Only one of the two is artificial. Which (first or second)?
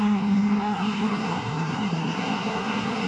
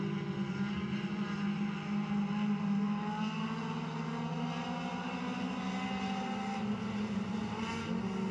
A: first